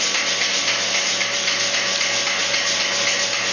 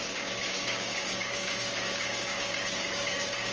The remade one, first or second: second